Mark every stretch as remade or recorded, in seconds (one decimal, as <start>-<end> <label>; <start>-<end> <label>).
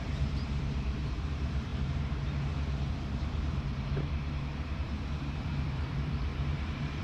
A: 0.0-7.0 remade